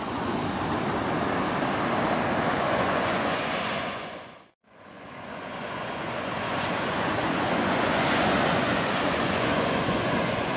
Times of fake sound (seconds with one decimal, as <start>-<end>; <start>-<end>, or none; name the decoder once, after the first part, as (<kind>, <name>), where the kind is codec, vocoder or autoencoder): 0.0-0.4 (vocoder, Vocos); 2.5-10.6